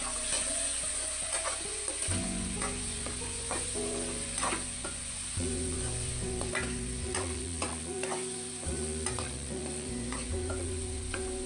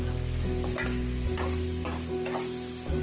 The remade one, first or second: first